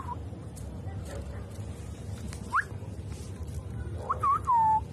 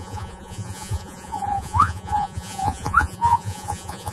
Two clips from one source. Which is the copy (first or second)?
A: second